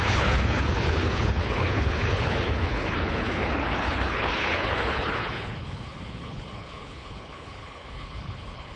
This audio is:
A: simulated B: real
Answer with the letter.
A